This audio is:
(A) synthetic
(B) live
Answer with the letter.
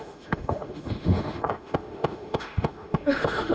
A